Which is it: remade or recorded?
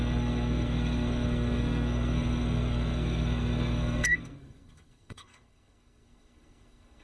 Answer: remade